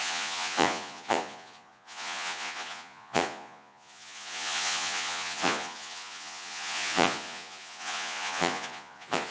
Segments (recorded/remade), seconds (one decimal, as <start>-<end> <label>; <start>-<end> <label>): 0.0-9.3 remade